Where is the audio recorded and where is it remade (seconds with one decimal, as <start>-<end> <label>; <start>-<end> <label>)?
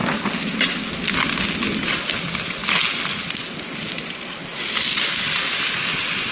0.0-6.3 recorded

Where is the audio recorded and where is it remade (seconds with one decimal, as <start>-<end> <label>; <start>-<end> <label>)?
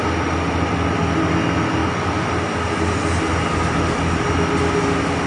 0.0-5.3 recorded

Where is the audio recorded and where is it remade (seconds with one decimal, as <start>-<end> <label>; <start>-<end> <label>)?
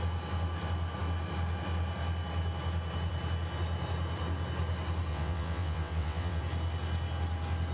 0.0-5.1 recorded; 5.1-6.4 remade; 6.4-7.7 recorded